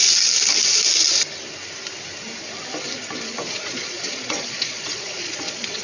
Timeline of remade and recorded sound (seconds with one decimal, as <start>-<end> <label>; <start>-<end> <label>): 0.0-3.5 recorded; 3.5-5.8 remade

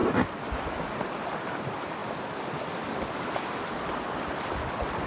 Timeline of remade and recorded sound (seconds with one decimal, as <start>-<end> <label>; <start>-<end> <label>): 0.0-5.1 recorded

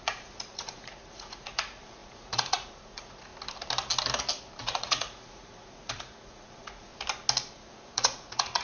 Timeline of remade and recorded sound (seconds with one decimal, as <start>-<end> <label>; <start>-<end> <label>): 0.0-3.3 remade; 3.3-4.6 recorded; 4.6-6.9 remade; 6.9-7.5 recorded; 7.5-8.6 remade